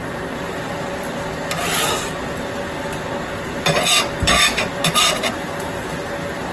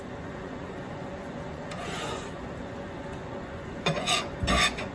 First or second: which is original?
first